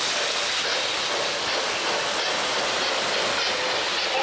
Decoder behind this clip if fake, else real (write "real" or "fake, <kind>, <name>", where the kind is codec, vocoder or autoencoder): real